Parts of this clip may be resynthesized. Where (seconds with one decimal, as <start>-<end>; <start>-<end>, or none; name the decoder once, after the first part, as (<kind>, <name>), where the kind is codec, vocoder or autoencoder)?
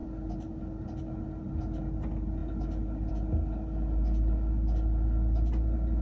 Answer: none